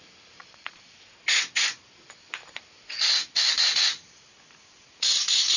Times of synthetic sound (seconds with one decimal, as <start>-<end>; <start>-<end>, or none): 0.4-1.3